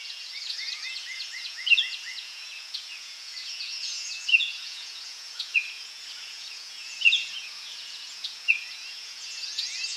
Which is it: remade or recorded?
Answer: remade